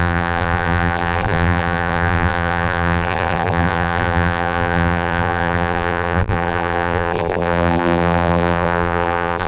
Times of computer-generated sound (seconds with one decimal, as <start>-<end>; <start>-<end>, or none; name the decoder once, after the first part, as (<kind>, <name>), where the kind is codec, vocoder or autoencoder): 0.0-9.5 (vocoder, BigVGAN v2)